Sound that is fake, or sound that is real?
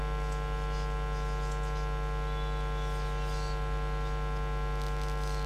real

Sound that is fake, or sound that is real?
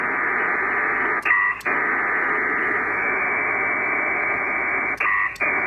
real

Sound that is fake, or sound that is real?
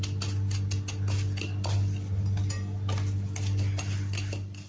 real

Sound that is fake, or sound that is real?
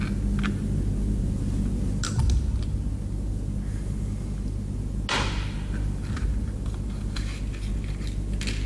real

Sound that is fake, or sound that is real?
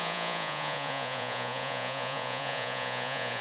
fake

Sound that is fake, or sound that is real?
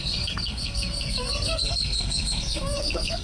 fake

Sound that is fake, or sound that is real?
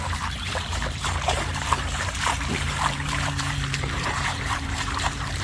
fake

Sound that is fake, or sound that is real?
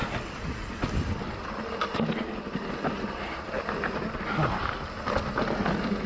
real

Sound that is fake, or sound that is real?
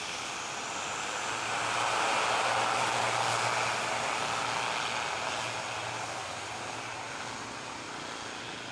real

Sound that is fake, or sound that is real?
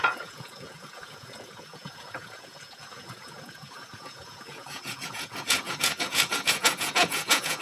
fake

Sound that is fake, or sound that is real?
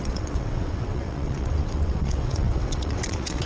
fake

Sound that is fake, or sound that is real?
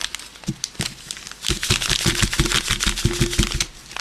real